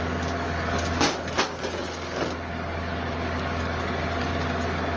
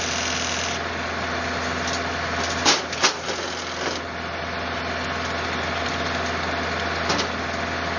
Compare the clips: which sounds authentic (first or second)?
second